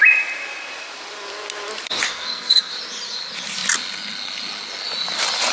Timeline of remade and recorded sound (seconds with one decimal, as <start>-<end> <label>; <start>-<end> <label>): 0.0-2.1 recorded; 2.1-2.7 remade; 2.7-5.5 recorded